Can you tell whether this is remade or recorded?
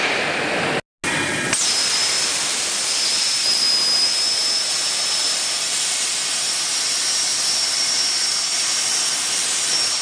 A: recorded